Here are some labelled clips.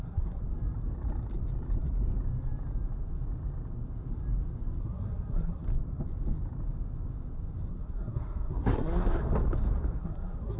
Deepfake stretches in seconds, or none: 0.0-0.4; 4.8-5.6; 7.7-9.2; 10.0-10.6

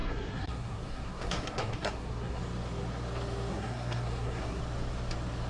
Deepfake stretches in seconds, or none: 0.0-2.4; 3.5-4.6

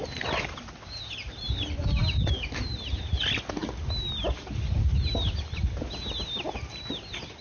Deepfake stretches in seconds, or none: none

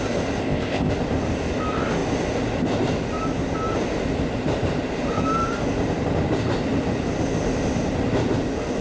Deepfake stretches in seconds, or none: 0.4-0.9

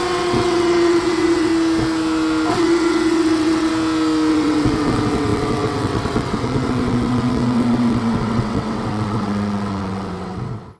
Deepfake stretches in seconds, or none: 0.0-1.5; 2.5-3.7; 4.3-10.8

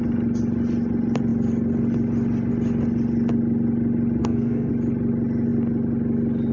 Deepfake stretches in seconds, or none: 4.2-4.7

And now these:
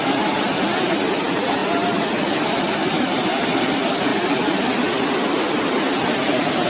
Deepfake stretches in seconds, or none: none

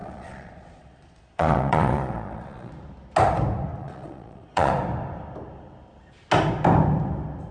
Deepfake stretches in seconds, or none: 0.0-2.7; 3.8-4.7